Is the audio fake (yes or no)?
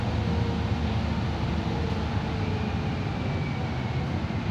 no